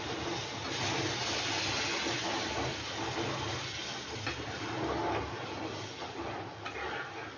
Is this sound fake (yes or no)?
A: no